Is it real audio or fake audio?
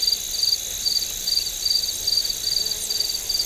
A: real